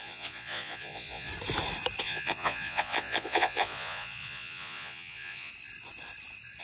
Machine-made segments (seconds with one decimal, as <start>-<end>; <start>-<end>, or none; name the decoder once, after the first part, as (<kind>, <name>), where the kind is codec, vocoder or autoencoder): 0.0-1.3 (vocoder, Vocos); 2.0-5.5